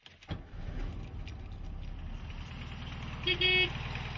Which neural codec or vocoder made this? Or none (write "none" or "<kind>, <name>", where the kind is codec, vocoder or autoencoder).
none